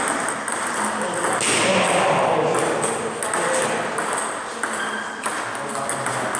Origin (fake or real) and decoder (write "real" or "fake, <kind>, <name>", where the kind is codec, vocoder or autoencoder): real